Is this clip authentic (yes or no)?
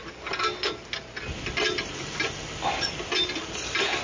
yes